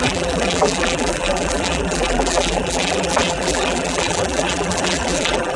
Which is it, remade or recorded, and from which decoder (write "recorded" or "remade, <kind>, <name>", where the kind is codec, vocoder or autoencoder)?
remade, vocoder, BigVGAN v2